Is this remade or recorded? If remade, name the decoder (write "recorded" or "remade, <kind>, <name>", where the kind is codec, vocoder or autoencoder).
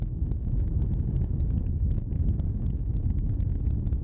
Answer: recorded